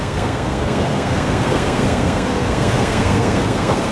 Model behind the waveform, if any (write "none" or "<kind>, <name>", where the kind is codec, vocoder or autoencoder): codec, SNAC